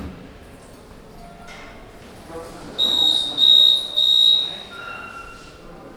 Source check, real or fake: real